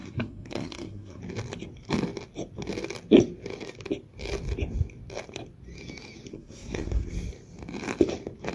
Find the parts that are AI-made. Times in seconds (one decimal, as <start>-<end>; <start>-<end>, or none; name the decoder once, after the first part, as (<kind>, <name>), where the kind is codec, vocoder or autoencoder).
0.0-1.2 (codec, SNAC); 6.3-7.1